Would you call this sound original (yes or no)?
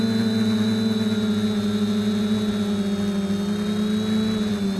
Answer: yes